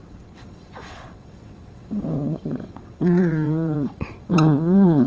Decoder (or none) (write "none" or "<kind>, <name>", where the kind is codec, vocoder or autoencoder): vocoder, WaveNeXt